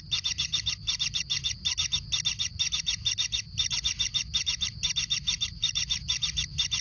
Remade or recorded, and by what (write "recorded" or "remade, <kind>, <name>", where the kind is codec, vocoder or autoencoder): recorded